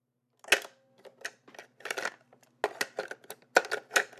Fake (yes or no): no